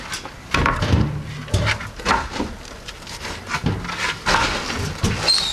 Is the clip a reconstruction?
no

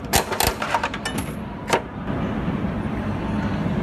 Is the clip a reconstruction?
no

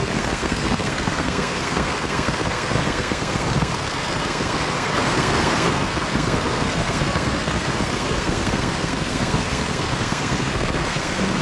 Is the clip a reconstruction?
yes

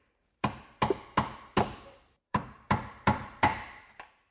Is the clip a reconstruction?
yes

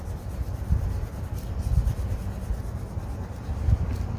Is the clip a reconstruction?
no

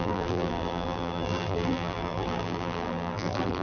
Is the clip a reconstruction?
yes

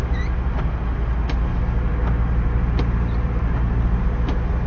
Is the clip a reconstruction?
no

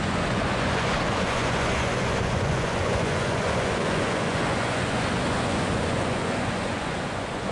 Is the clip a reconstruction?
yes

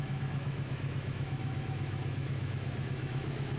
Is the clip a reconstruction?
yes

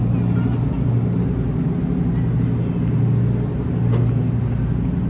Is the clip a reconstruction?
no